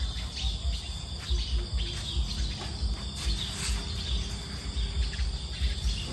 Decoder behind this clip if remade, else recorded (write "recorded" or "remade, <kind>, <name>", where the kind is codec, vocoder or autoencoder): recorded